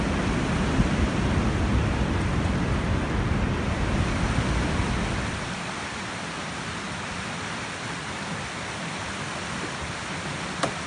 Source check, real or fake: real